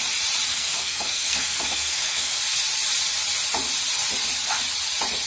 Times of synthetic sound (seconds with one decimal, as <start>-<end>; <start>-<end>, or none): 0.5-2.4